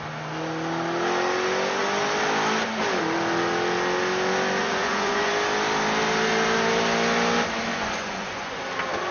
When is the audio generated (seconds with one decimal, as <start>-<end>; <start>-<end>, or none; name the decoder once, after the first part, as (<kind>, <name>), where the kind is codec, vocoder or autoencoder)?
4.6-5.3 (vocoder, Vocos); 7.7-8.6

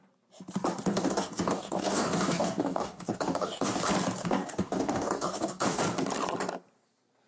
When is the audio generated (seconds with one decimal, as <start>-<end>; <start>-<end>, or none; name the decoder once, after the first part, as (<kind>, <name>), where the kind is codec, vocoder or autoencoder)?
0.9-3.8 (codec, DAC); 4.2-5.8

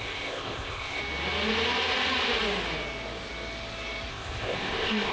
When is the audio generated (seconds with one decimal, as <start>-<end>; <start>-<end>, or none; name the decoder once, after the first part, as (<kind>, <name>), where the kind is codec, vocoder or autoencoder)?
0.0-1.0 (codec, ZipCodec); 4.1-5.1

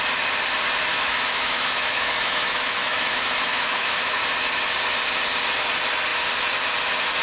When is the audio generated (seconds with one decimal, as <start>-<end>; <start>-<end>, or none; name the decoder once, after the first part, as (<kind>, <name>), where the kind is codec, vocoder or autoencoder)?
0.9-4.2 (autoencoder, DAC-VAE)

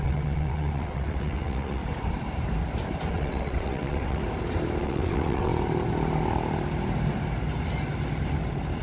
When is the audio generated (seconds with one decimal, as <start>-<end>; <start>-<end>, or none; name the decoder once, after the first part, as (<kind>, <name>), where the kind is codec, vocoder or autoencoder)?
0.0-1.8 (vocoder, WaveNeXt); 3.1-4.2; 4.8-5.5

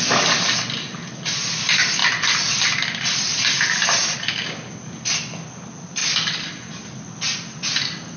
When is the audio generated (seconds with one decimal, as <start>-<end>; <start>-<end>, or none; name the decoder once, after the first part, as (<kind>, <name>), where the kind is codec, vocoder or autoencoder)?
2.0-2.7 (vocoder, BigVGAN v2)

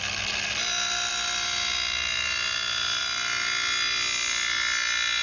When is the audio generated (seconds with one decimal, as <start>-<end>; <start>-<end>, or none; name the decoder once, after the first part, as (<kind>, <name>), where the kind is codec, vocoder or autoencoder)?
none